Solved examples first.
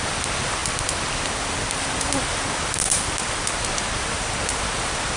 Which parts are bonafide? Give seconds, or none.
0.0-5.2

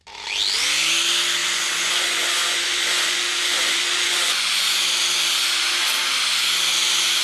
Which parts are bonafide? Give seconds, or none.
0.0-1.4; 4.8-7.2

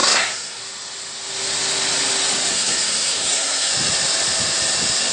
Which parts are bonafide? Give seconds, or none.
0.6-2.5; 3.7-5.1

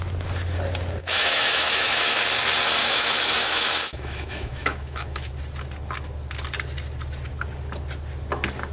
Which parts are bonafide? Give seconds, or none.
0.0-1.0; 2.2-2.8; 5.3-8.7

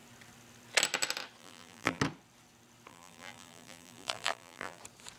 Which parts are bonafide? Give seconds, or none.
0.0-1.4; 2.0-2.9; 4.8-5.2